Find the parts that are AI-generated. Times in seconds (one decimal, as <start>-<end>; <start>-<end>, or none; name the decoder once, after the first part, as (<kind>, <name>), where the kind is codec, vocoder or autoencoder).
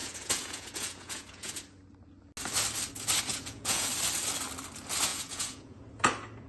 0.0-1.5 (vocoder, Vocos); 3.3-3.9; 5.1-5.8